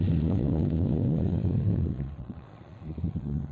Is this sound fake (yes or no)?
yes